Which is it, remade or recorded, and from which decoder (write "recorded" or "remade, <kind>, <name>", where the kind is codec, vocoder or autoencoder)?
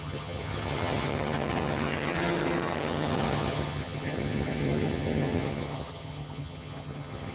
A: remade, vocoder, HiFi-GAN